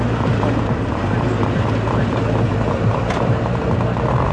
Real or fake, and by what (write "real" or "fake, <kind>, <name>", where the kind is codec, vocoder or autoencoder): fake, vocoder, BigVGAN v2